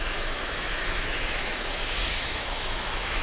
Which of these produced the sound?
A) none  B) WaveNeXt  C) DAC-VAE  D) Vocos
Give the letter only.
C